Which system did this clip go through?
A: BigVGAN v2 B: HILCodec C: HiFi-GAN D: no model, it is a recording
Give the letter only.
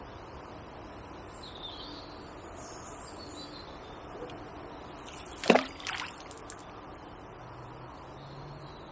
D